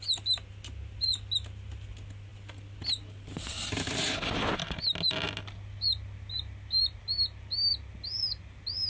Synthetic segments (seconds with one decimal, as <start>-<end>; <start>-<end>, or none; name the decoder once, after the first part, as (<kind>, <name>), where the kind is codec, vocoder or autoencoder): none